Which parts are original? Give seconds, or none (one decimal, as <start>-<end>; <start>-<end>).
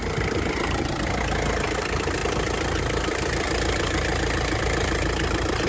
1.2-2.2; 4.6-5.7